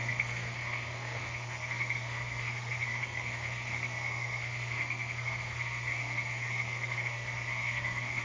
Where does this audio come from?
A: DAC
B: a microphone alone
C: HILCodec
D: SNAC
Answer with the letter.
D